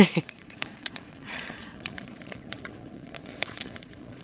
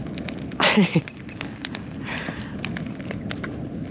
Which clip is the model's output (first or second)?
first